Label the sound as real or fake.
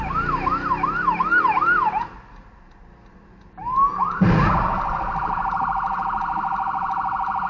real